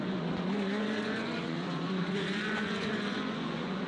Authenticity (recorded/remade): remade